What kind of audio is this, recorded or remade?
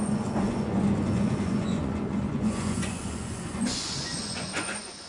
remade